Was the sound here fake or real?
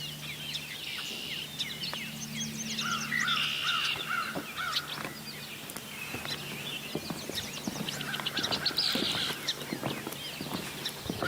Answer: real